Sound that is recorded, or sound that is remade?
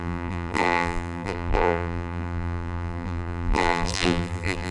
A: remade